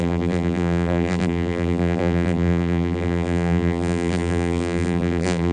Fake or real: fake